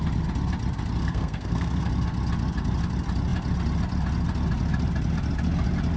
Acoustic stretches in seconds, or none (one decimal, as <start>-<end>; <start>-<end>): 0.0-1.0; 1.9-6.0